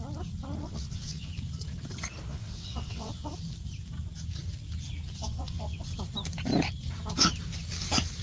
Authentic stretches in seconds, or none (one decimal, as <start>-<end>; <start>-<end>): 0.0-0.6; 1.3-2.3; 3.3-5.2; 5.8-8.2